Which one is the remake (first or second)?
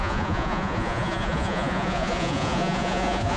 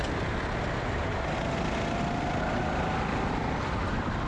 first